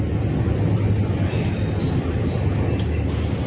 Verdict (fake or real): real